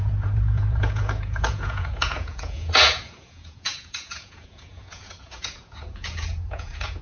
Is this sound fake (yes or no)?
yes